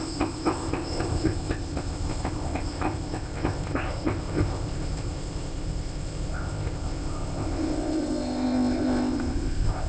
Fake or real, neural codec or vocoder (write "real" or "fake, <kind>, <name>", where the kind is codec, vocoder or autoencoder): fake, codec, ZipCodec